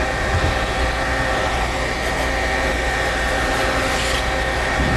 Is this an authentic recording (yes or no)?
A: yes